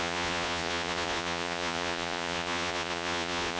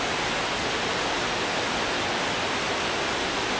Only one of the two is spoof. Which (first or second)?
first